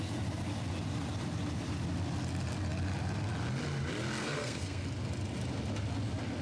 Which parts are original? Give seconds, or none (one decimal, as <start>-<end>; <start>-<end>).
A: 0.0-4.2; 4.8-6.4